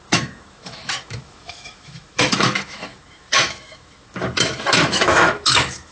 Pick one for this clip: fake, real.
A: fake